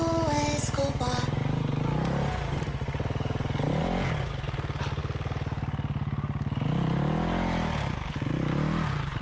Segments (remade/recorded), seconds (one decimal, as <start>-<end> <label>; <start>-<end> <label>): 0.0-9.2 recorded

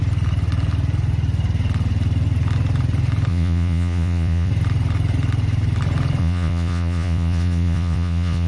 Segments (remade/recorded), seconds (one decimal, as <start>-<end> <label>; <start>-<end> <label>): 0.0-3.3 recorded; 3.3-4.5 remade; 4.5-6.2 recorded; 6.2-8.5 remade